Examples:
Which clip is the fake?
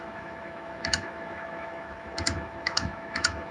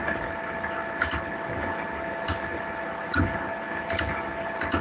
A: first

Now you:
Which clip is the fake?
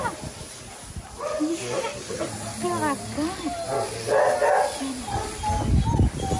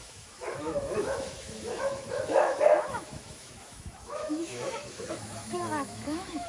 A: second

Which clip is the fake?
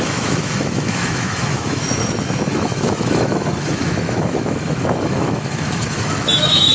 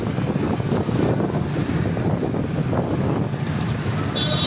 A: first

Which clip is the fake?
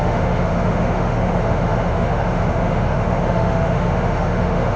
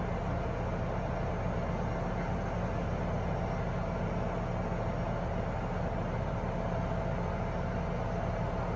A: first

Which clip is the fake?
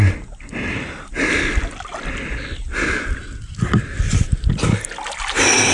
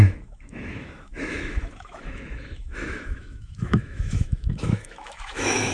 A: second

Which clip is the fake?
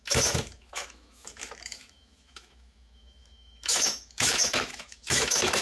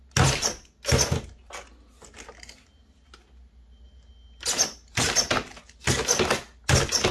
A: first